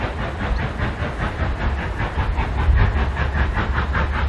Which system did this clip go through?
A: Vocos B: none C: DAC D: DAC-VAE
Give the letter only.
B